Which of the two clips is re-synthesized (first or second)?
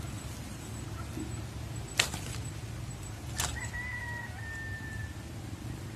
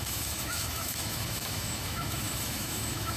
second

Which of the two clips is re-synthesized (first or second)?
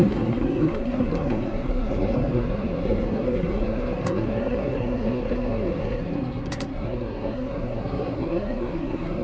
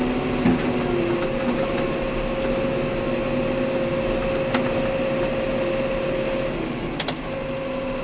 first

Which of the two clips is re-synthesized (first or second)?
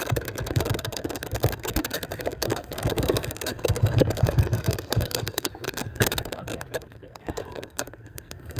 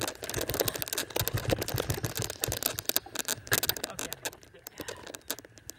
first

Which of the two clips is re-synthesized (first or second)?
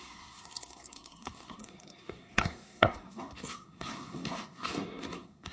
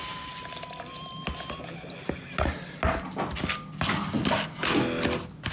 first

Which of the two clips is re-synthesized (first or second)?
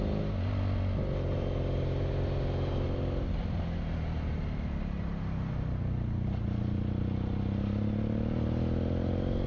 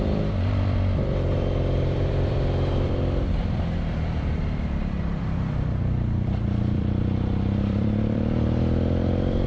second